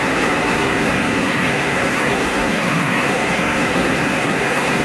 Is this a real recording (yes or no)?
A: no